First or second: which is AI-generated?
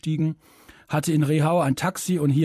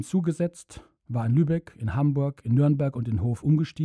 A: first